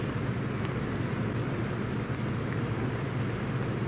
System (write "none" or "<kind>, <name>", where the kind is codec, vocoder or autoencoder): none